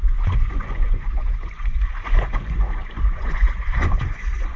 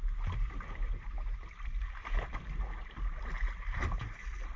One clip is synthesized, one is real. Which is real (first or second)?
second